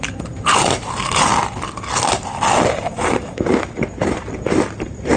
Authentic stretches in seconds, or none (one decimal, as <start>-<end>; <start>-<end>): 1.3-2.6